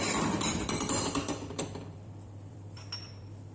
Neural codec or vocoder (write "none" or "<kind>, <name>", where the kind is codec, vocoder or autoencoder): vocoder, BigVGAN v2